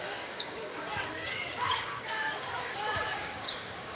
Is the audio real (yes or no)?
no